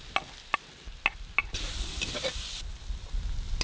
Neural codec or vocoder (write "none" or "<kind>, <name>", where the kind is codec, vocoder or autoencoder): none